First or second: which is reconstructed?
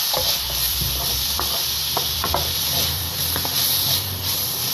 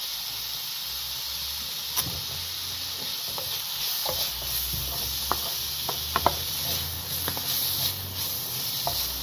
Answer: first